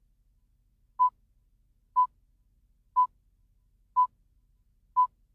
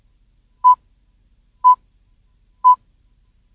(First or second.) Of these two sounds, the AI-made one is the second